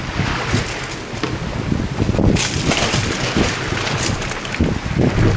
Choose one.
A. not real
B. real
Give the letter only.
B